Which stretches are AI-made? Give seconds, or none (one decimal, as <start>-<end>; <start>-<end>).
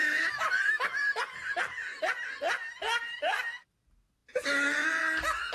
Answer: none